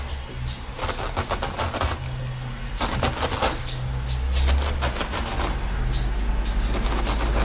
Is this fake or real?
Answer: real